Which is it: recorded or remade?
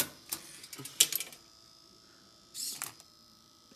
recorded